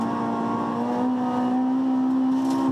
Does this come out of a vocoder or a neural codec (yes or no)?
no